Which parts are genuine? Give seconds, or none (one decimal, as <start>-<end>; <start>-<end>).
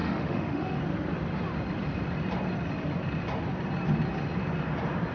0.8-5.1